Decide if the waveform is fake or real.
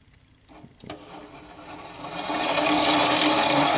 real